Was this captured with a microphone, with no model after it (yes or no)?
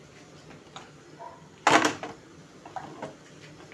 yes